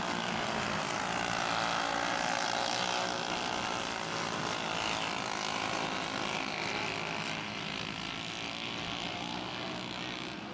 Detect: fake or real real